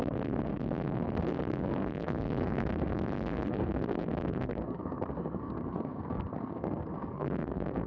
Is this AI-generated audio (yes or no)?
yes